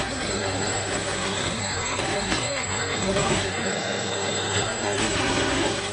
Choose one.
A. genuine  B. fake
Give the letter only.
B